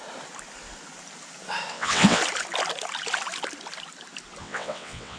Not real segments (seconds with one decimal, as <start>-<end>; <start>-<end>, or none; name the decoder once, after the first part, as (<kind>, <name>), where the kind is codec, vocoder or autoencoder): 1.7-2.2 (vocoder, WaveNeXt); 4.4-5.2